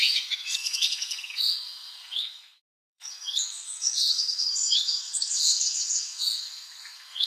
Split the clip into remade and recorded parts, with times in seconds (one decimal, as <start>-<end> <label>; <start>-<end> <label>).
0.0-7.3 remade